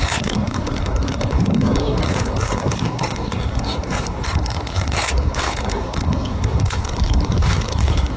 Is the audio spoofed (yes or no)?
yes